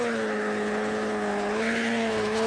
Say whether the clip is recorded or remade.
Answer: remade